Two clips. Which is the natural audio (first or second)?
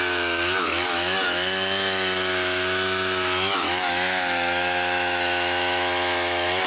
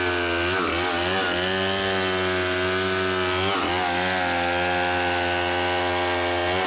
second